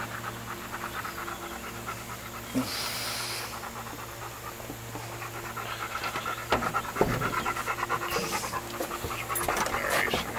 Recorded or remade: recorded